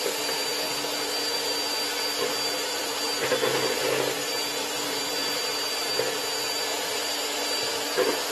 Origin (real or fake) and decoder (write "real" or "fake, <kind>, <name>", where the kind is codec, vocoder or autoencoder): real